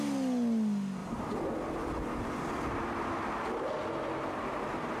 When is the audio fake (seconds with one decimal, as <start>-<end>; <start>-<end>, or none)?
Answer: 1.0-3.7